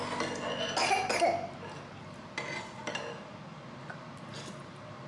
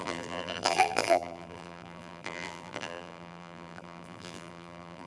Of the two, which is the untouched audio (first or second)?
first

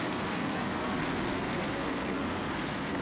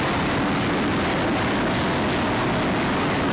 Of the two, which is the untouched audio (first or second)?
second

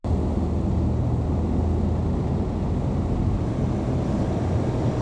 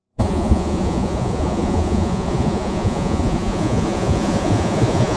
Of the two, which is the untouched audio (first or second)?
first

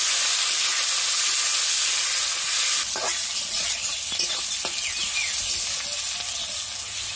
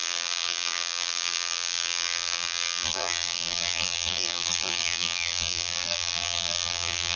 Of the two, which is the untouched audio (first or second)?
first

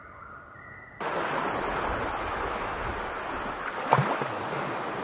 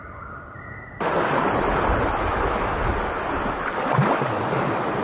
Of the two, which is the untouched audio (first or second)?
first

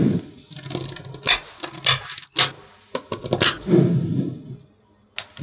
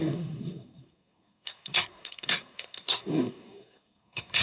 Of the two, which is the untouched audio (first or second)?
first